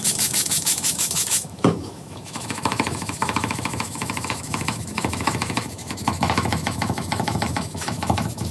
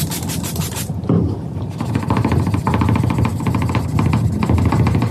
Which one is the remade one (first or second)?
first